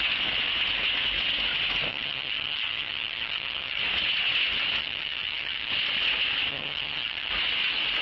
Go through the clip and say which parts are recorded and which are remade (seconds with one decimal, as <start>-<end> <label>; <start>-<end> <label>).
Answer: 0.0-1.9 recorded; 1.9-3.8 remade; 3.8-4.8 recorded; 4.8-5.7 remade; 5.7-6.5 recorded; 6.5-7.3 remade; 7.3-8.0 recorded